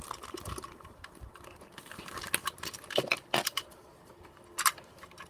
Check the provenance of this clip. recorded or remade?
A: recorded